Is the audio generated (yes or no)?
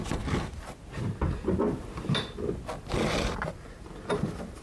no